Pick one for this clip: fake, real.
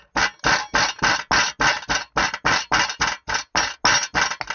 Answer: real